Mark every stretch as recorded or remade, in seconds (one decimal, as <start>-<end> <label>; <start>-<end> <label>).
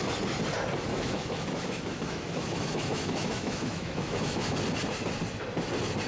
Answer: 0.0-0.9 recorded; 0.9-4.6 remade; 4.6-6.1 recorded